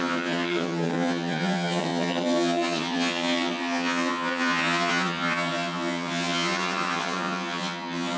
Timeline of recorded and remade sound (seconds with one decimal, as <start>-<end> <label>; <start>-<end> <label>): 0.0-8.2 remade